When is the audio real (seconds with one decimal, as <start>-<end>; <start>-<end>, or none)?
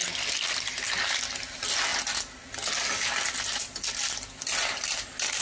0.0-5.4